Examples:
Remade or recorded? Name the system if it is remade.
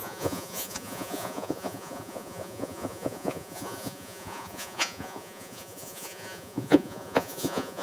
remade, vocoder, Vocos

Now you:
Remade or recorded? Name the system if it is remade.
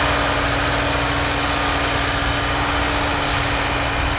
recorded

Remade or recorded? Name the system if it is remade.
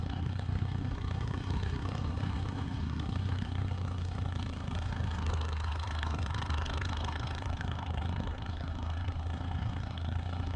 remade, codec, SNAC